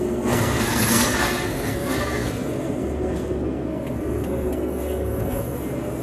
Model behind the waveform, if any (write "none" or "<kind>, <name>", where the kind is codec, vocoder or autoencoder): codec, SNAC